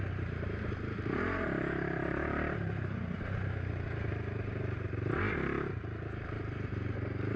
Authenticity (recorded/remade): remade